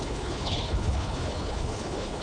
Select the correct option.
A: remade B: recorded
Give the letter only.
A